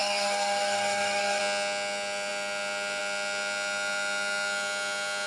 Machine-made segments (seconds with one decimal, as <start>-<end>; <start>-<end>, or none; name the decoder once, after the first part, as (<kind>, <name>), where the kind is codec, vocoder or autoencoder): 0.0-1.4 (codec, SNAC)